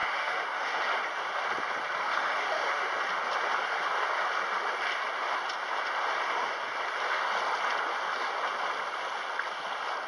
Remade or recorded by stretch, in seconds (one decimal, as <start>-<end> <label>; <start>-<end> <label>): 0.0-0.8 remade; 0.8-2.0 recorded; 2.0-2.9 remade; 2.9-10.1 recorded